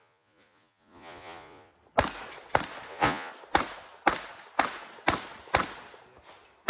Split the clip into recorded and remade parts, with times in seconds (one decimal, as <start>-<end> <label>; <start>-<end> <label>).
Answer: 0.0-1.7 remade; 1.7-2.9 recorded; 2.9-3.3 remade; 3.3-6.7 recorded